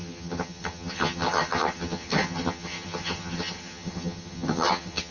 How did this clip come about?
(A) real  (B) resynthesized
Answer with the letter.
B